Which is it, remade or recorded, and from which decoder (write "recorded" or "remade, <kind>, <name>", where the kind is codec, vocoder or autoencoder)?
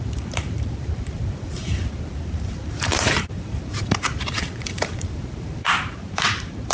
remade, vocoder, BigVGAN v2